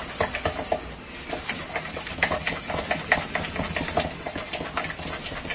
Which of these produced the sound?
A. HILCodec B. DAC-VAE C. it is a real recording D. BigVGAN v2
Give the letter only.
C